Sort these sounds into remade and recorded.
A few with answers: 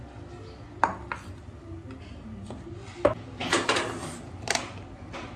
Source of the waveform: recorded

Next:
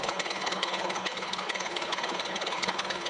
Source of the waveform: remade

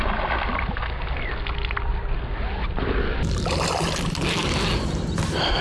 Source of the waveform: recorded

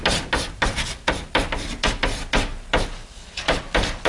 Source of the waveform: recorded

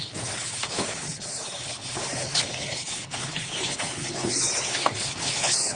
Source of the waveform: remade